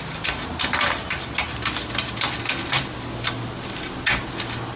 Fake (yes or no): no